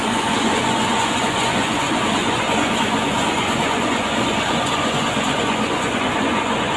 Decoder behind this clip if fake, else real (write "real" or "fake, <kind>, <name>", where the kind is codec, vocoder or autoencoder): fake, vocoder, Vocos